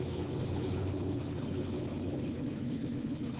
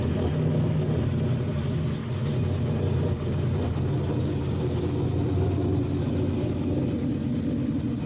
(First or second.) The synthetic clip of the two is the first